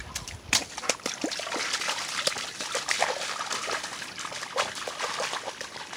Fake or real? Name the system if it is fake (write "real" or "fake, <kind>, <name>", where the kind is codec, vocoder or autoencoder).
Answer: real